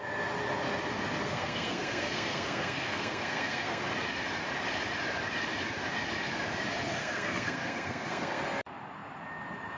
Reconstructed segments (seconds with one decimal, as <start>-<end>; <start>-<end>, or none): 1.2-3.8; 7.0-8.4